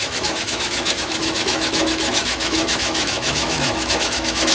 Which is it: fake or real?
fake